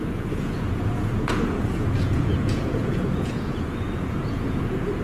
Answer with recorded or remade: remade